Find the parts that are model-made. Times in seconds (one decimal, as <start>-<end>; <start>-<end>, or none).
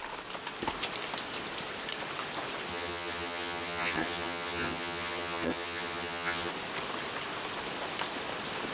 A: 2.7-6.5